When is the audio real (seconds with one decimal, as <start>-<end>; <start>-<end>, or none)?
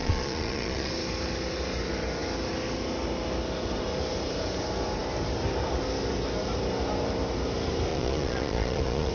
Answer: 0.9-7.9